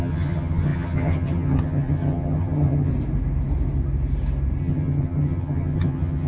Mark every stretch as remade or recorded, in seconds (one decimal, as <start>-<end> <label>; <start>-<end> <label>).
0.0-2.9 remade; 2.9-4.6 recorded; 4.6-6.3 remade